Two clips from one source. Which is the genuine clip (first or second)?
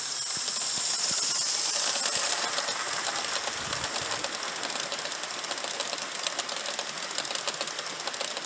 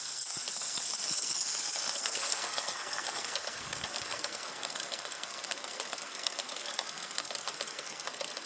first